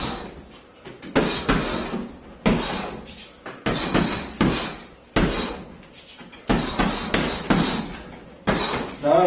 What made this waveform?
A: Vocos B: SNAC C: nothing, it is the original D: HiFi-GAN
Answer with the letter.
C